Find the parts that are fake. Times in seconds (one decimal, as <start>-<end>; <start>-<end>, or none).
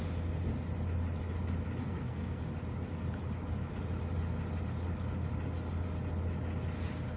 1.8-2.4